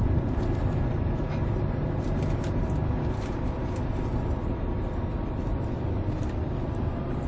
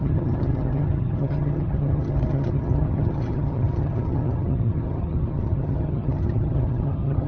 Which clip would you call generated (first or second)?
second